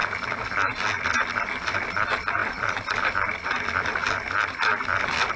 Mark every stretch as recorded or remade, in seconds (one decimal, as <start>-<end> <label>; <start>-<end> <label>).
0.0-2.4 recorded; 2.4-3.1 remade; 3.1-5.4 recorded